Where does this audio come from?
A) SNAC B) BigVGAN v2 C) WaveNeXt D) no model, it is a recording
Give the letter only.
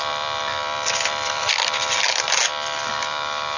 B